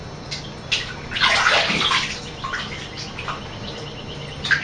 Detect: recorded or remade recorded